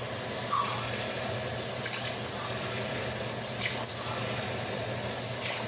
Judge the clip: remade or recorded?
recorded